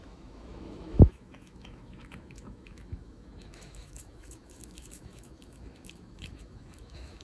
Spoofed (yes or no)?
yes